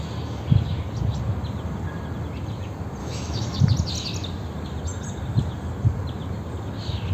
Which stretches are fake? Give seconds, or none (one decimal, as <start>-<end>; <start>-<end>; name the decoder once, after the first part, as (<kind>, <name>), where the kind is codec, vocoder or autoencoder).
3.0-3.6 (autoencoder, DAC-VAE)